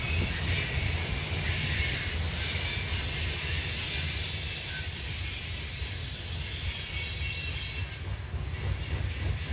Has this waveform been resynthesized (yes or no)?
no